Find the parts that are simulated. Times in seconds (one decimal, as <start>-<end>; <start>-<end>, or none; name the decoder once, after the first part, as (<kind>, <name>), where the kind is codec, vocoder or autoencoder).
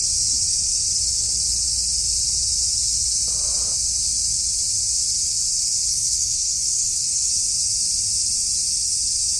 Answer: 5.9-7.3 (codec, SNAC)